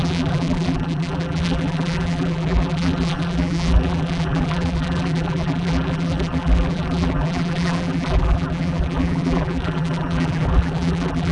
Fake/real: fake